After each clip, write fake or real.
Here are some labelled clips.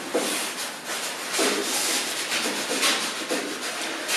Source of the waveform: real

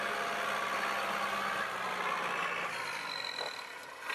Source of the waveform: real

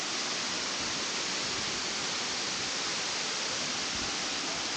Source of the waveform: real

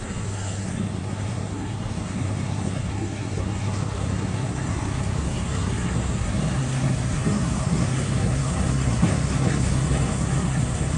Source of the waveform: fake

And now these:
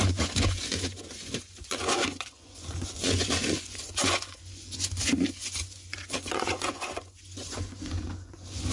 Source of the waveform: fake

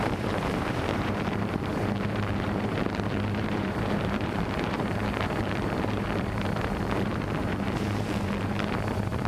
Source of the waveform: fake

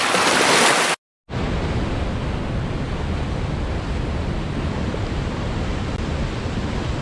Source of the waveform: real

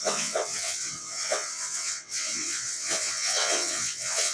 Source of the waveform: fake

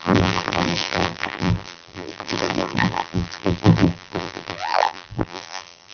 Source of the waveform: fake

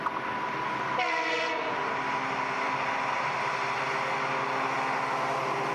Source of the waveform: real